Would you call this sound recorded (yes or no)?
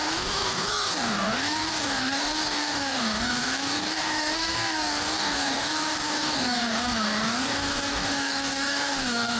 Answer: no